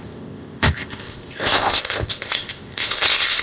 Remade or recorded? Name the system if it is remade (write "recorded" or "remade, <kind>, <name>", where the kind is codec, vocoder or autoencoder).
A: remade, codec, ZipCodec